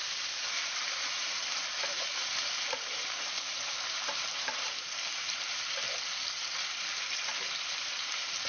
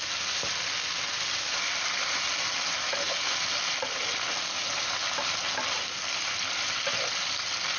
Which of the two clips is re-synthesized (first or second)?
first